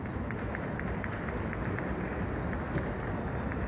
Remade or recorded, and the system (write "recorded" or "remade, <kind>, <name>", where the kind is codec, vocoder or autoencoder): recorded